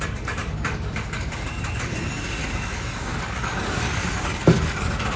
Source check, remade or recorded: remade